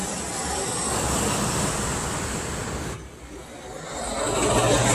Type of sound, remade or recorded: recorded